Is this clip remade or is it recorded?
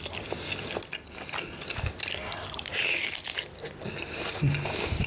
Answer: recorded